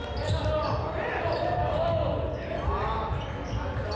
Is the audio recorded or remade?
recorded